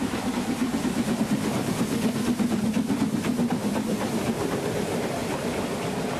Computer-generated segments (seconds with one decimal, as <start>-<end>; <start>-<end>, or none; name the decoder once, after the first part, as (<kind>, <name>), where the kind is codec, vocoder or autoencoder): 0.0-0.6 (vocoder, BigVGAN v2); 4.3-5.2

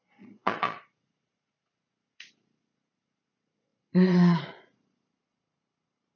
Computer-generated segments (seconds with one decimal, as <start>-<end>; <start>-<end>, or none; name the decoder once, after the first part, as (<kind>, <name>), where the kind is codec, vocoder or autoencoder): 0.0-6.2 (vocoder, Vocos)

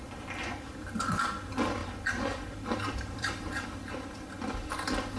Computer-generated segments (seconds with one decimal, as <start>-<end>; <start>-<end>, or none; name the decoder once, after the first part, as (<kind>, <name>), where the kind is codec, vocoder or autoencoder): 1.8-4.5 (vocoder, BigVGAN v2)